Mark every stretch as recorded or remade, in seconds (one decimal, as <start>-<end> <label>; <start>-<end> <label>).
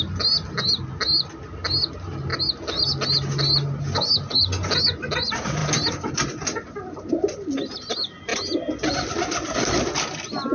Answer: 0.0-10.5 recorded